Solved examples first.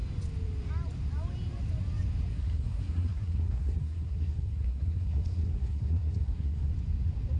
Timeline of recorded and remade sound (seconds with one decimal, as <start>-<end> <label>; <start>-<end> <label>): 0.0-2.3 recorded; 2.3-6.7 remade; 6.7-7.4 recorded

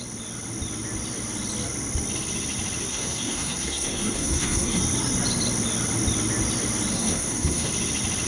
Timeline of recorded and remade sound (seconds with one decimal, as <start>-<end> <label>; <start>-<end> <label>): 0.0-2.9 recorded; 2.9-4.8 remade; 4.8-6.9 recorded; 6.9-7.7 remade; 7.7-8.3 recorded

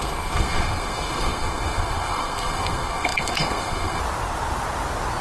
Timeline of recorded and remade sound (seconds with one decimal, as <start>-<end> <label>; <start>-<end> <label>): 0.0-4.0 remade; 4.0-5.2 recorded